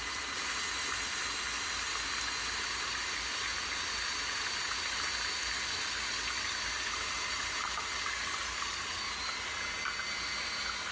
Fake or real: real